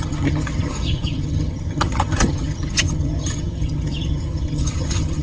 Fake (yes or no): yes